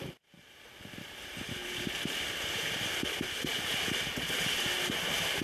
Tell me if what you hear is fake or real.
real